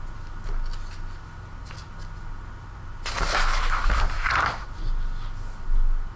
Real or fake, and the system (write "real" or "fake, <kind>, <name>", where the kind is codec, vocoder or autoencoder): real